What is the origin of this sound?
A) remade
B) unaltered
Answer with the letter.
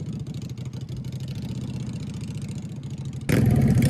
B